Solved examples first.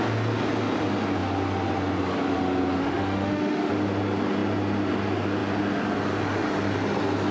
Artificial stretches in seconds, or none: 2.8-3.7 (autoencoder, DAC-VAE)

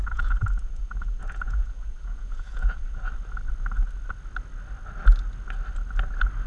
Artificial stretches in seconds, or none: 0.0-3.1 (vocoder, Vocos)

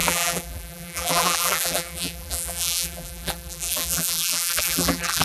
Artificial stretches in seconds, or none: 0.0-5.2 (vocoder, BigVGAN v2)

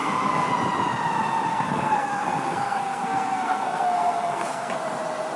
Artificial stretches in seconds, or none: 0.0-0.5 (codec, SNAC); 1.5-4.7

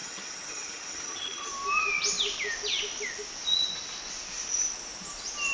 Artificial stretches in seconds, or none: 0.0-1.5 (vocoder, HiFi-GAN)

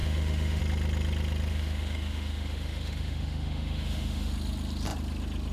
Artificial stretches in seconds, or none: 0.0-0.6 (autoencoder, DAC-VAE); 1.5-4.3